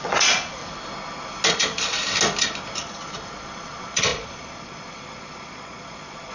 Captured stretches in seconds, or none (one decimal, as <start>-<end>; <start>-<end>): 0.6-1.5; 2.0-2.8